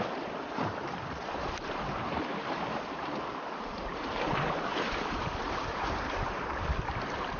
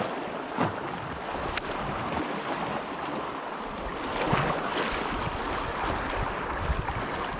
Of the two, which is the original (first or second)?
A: second